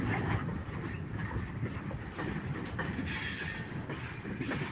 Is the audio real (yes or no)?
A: yes